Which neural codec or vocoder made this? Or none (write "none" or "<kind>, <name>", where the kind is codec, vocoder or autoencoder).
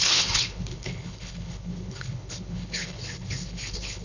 codec, HILCodec